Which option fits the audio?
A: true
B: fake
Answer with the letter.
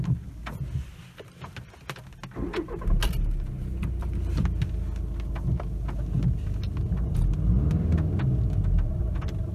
A